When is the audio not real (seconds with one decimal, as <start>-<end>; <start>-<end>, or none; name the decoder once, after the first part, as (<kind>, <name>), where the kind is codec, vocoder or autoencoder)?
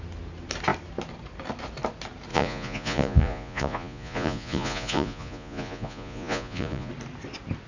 2.3-6.9 (vocoder, Vocos)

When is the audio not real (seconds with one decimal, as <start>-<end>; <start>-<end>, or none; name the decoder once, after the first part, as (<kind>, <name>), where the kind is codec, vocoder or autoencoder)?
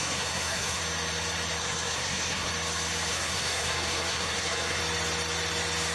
0.0-0.8 (codec, SNAC); 1.6-2.5; 3.1-4.8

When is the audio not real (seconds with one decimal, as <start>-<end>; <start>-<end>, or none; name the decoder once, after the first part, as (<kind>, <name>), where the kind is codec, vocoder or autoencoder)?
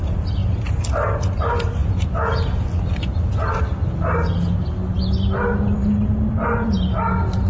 none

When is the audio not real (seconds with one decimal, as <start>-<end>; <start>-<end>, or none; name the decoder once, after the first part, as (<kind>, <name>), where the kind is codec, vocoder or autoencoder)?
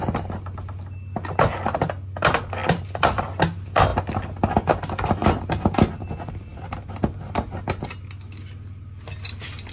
2.6-3.2 (vocoder, BigVGAN v2); 5.2-5.9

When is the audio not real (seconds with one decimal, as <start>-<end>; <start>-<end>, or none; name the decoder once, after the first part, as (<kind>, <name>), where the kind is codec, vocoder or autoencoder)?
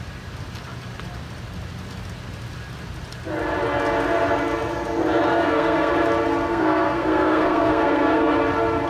5.3-5.9 (codec, SNAC); 6.5-8.3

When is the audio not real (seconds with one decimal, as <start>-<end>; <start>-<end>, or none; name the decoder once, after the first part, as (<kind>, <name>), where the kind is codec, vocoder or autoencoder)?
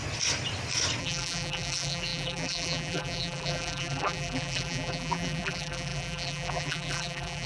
1.0-7.5 (vocoder, BigVGAN v2)